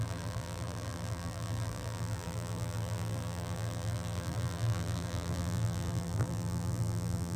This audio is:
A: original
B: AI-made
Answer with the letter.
B